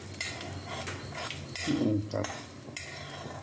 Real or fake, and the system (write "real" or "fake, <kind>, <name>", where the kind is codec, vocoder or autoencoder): real